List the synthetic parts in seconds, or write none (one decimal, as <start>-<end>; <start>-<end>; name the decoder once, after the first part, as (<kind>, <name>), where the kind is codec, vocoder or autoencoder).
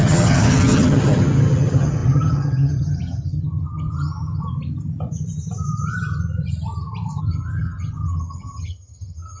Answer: 0.0-4.4 (vocoder, HiFi-GAN); 7.2-9.4